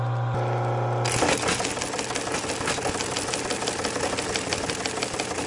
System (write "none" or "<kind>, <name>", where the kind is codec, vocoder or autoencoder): none